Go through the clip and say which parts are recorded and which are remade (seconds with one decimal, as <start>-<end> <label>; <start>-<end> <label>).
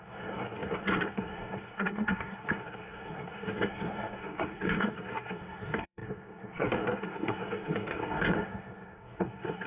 0.0-9.7 remade